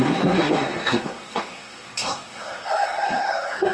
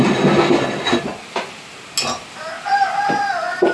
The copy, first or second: first